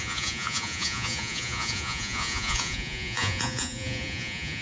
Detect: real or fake fake